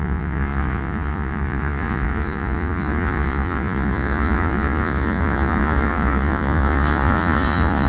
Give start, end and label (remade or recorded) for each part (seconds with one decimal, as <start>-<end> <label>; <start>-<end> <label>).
0.0-7.9 remade